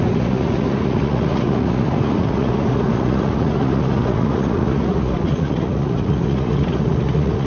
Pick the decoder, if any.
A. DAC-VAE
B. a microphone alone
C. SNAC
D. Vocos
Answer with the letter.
D